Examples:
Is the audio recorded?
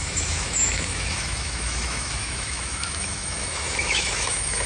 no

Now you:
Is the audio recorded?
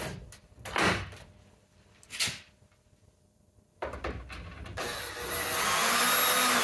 yes